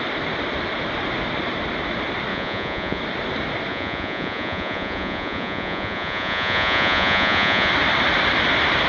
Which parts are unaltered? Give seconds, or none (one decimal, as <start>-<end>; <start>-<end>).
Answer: 0.0-2.3; 3.0-3.7; 7.7-8.9